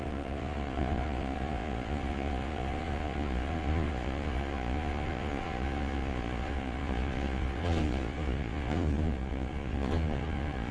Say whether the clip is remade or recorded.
remade